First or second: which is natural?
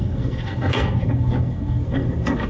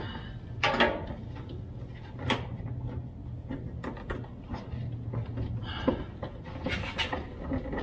second